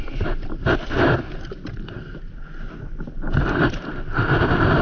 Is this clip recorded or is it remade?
recorded